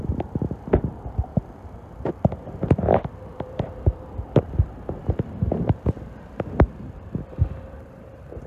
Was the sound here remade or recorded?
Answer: remade